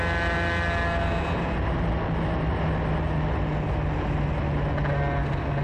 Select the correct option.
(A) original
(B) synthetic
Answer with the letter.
A